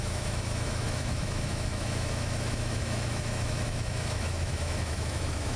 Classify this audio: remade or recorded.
remade